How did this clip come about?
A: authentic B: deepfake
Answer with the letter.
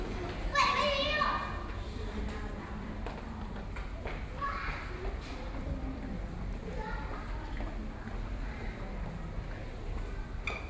A